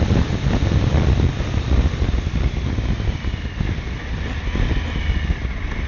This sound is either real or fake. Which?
real